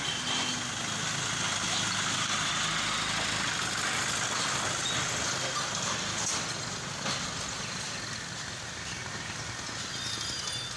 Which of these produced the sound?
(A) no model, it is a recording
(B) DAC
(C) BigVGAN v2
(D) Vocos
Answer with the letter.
A